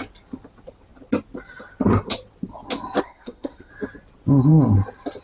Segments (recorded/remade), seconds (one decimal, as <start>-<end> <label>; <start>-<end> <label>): 0.0-3.0 recorded; 3.0-3.7 remade; 3.7-5.2 recorded